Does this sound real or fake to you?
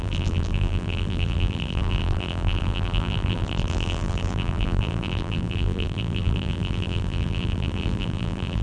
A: fake